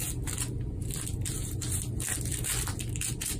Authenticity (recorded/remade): recorded